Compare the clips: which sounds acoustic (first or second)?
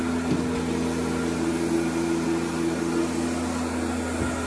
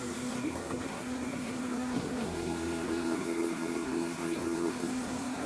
first